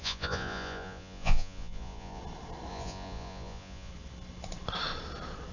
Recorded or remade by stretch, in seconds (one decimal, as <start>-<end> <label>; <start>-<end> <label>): 0.0-2.2 remade; 2.2-2.7 recorded; 2.7-3.9 remade; 3.9-5.5 recorded